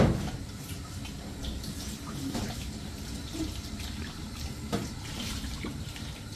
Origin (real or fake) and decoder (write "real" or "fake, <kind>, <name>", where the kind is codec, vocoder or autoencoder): fake, vocoder, BigVGAN v2